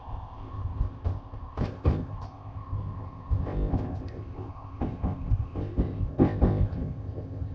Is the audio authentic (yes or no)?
no